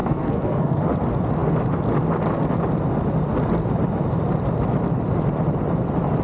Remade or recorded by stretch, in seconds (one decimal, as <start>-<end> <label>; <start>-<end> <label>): 0.0-0.8 remade; 0.8-6.2 recorded